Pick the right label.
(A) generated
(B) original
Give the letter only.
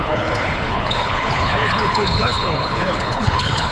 A